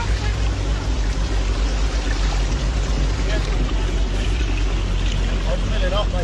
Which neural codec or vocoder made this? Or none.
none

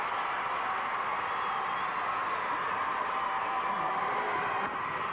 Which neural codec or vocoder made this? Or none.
none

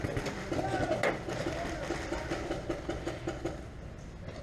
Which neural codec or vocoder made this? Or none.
none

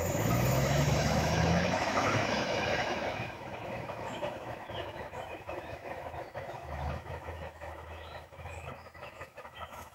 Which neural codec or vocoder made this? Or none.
autoencoder, DAC-VAE